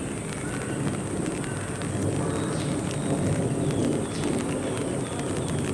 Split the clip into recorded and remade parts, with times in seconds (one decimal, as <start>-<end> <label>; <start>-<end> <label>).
0.0-5.7 recorded